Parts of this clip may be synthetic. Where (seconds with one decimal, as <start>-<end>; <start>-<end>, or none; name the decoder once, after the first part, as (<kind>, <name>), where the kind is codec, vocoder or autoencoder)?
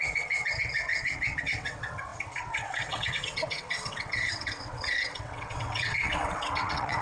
0.0-7.0 (vocoder, WaveNeXt)